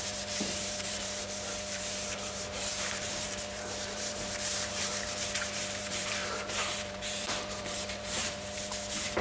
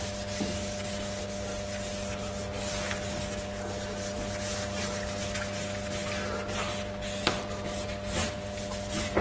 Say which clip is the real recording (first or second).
second